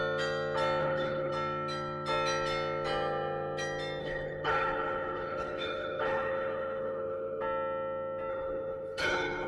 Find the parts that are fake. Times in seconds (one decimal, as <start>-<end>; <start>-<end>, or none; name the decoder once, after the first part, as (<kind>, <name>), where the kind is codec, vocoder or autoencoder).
0.8-1.3 (codec, HILCodec); 4.0-7.4; 8.3-9.5